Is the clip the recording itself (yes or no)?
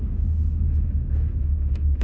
no